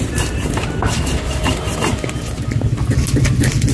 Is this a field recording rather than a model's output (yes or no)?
yes